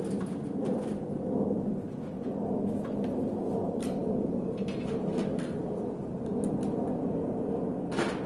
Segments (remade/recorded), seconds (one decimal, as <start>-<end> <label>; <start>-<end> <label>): 0.0-8.3 recorded